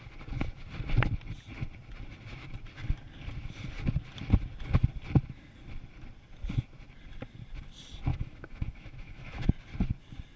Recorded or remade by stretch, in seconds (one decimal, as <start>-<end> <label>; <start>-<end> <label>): 0.0-8.1 recorded; 8.1-9.5 remade; 9.5-10.4 recorded